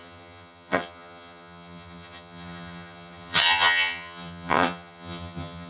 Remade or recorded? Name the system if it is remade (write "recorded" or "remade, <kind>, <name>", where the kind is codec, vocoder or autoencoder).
remade, vocoder, HiFi-GAN